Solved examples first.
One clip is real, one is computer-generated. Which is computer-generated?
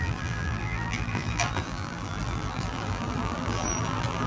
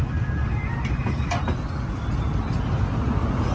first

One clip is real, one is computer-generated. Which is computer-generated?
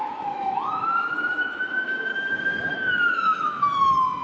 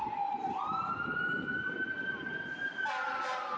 first